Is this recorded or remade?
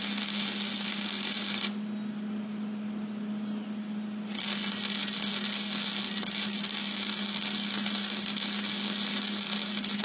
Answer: recorded